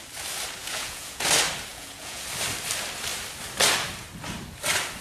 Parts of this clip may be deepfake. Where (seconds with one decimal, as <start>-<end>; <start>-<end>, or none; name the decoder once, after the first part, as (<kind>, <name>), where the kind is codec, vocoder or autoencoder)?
0.6-1.2 (vocoder, Vocos); 1.7-2.2